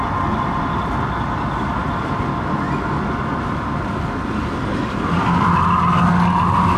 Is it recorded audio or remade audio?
recorded